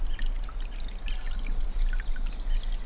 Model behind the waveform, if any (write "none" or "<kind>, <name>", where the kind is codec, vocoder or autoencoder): none